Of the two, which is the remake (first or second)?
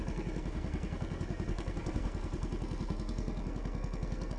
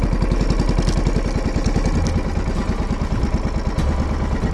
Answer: first